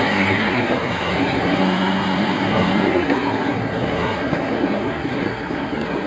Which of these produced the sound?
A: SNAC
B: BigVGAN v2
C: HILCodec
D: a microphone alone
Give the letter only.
A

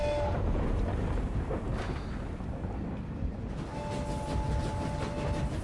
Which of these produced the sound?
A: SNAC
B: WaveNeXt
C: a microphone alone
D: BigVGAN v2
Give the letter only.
C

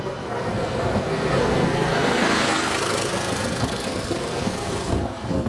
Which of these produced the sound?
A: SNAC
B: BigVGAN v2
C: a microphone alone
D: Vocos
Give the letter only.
A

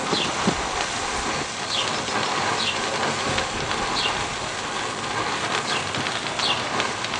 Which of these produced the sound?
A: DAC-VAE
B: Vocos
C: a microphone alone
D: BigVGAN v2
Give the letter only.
C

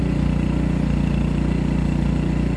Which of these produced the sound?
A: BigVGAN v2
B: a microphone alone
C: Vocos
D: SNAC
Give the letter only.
B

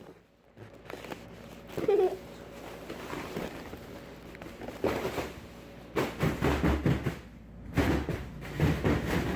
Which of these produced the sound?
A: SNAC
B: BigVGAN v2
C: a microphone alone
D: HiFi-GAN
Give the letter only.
C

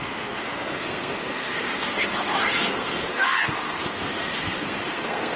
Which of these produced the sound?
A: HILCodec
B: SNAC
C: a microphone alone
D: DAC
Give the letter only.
B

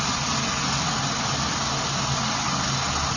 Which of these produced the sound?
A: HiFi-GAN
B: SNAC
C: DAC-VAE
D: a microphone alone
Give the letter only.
D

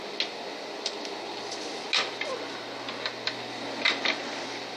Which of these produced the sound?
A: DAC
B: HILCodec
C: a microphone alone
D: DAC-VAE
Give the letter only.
C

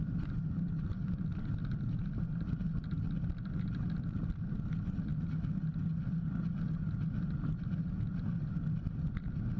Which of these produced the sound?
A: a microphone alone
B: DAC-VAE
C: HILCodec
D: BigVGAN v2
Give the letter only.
A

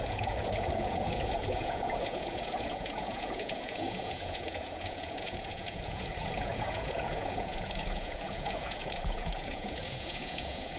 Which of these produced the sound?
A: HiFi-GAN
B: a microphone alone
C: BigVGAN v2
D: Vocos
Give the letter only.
D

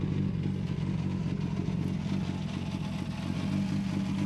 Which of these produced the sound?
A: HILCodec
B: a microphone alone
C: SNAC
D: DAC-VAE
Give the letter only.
B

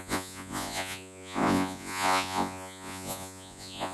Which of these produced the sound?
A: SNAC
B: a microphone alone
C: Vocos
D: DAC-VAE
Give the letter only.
C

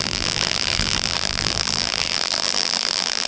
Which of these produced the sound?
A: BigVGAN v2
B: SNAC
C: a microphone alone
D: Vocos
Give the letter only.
A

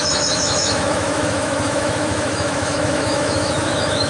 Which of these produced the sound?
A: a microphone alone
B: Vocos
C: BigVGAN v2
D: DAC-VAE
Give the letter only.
D